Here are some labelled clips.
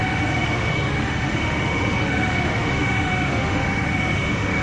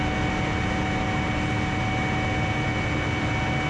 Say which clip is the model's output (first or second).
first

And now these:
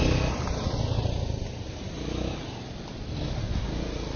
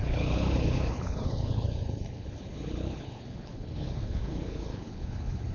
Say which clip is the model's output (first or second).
second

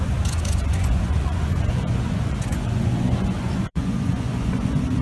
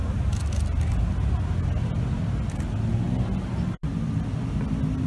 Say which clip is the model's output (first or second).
first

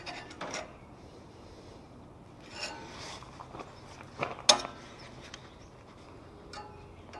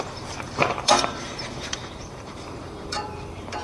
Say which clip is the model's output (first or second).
second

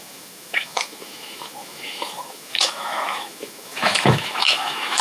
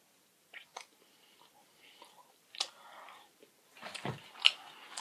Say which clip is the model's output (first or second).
first